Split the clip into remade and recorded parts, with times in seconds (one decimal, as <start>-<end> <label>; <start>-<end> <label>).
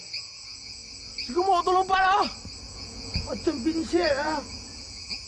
0.0-0.8 remade; 0.8-2.6 recorded; 2.6-5.3 remade